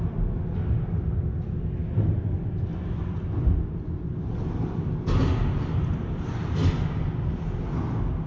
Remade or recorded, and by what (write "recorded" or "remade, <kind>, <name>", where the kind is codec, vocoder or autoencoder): recorded